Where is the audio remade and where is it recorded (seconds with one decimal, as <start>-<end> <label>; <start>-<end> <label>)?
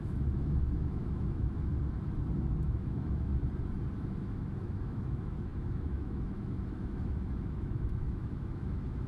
0.0-1.7 remade; 1.7-2.5 recorded; 2.5-3.3 remade; 3.3-4.0 recorded; 4.0-9.1 remade